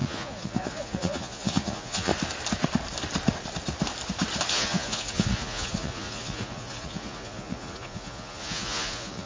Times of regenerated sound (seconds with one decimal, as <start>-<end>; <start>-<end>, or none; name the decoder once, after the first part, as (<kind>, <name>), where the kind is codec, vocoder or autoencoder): 0.0-2.1 (vocoder, Vocos); 4.5-9.3